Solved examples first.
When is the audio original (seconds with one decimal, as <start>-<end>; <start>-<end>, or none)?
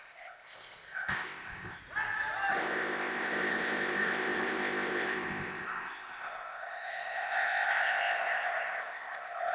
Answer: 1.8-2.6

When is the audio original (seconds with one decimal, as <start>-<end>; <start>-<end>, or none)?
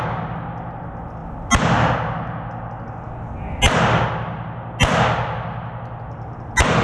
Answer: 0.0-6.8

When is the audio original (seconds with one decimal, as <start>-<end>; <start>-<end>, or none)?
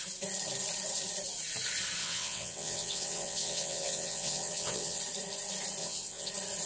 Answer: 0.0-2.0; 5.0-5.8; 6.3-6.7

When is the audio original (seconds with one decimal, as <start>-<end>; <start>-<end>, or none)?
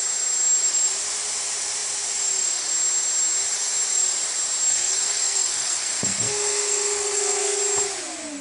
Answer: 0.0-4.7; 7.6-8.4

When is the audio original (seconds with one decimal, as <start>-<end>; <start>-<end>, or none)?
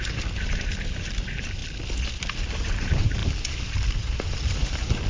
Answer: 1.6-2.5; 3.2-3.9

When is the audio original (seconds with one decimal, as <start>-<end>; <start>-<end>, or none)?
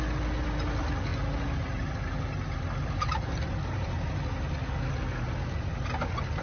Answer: 0.0-6.4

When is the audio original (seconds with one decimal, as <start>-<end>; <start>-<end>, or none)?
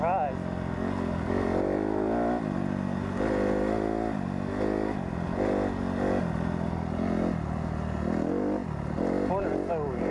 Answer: 0.0-10.1